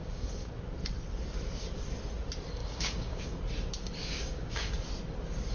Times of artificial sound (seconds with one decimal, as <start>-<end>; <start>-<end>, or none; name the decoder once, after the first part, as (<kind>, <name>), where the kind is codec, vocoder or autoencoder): 0.0-0.6 (codec, DAC); 2.6-3.4; 4.0-4.7